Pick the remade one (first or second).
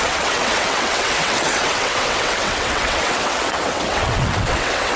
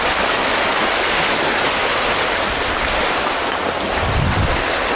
first